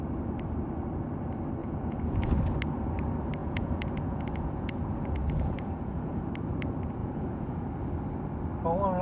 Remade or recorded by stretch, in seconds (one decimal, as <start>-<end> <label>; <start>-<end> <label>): 0.0-1.6 recorded; 1.6-2.3 remade; 2.3-3.4 recorded; 3.4-6.2 remade; 6.2-7.0 recorded; 7.0-7.6 remade; 7.6-9.0 recorded